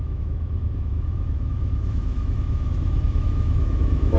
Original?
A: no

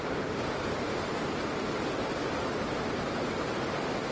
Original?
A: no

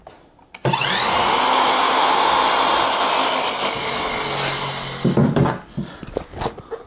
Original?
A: yes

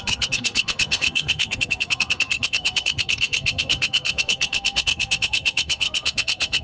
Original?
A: no